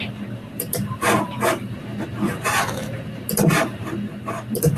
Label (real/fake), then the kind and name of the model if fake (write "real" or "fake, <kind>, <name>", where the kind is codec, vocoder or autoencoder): fake, vocoder, BigVGAN v2